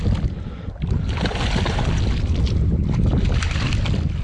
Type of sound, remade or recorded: recorded